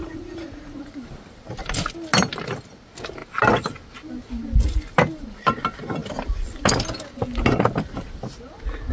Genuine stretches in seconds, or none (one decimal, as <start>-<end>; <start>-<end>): 0.8-8.9